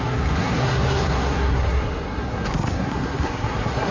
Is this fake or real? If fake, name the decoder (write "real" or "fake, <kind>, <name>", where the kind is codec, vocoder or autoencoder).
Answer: fake, codec, SNAC